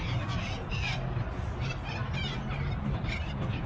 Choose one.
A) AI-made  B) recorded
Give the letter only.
B